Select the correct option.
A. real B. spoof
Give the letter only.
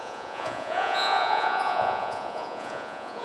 B